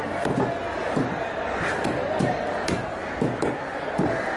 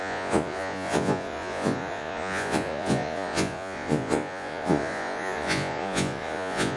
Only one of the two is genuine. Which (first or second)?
first